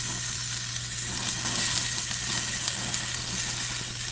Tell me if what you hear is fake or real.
real